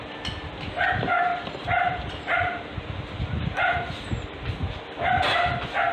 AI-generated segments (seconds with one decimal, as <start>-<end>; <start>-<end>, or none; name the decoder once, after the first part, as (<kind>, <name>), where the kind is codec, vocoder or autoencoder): 1.3-4.8 (vocoder, BigVGAN v2)